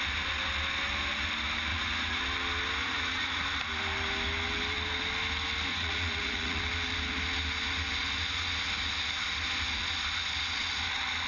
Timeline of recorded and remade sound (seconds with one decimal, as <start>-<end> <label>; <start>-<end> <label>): 0.0-1.7 recorded; 1.7-2.2 remade; 2.2-2.8 recorded; 2.8-3.4 remade; 3.4-5.7 recorded; 5.7-6.6 remade; 6.6-11.3 recorded